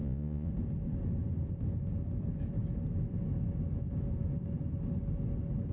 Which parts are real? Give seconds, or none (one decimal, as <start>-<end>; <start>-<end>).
0.5-5.7